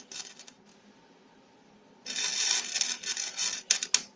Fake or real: real